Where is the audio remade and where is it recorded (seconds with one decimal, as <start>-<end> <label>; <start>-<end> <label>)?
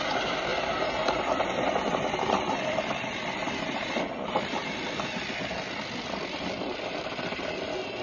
0.0-3.4 recorded; 3.4-4.0 remade; 4.0-8.0 recorded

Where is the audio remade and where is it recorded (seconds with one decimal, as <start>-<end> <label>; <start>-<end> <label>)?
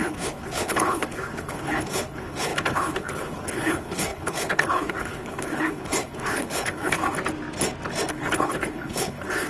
0.0-7.0 remade; 7.0-8.1 recorded; 8.1-9.5 remade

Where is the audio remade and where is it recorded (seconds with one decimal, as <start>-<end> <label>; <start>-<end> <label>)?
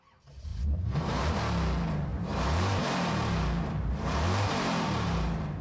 0.0-0.5 recorded; 0.5-1.4 remade; 1.4-2.1 recorded; 2.1-5.6 remade